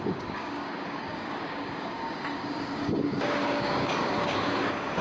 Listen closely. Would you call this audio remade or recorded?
remade